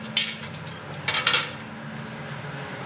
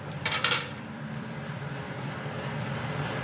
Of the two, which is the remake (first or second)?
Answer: second